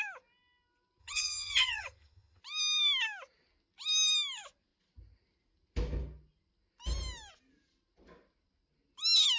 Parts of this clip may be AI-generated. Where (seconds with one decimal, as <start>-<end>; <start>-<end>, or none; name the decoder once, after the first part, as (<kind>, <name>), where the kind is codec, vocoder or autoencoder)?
1.0-2.4 (vocoder, HiFi-GAN)